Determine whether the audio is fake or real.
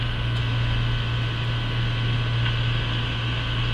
real